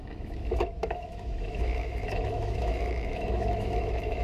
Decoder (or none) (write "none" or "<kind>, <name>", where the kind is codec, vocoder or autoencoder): autoencoder, DAC-VAE